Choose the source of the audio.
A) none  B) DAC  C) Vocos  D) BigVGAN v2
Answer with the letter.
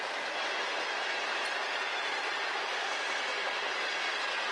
A